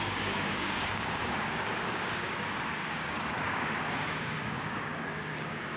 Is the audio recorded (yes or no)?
no